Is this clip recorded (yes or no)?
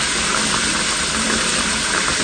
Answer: yes